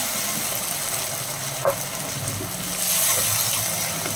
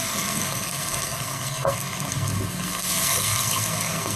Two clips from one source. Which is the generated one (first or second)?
second